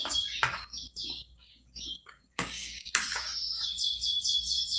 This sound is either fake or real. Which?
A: fake